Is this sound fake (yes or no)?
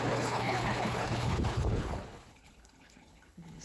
yes